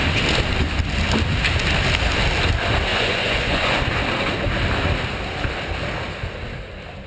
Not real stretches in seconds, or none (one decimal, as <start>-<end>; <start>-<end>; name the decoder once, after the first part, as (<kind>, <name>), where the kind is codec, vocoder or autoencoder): 2.9-3.8 (vocoder, Vocos)